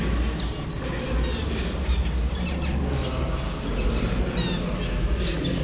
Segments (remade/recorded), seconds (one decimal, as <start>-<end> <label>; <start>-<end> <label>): 0.0-5.6 recorded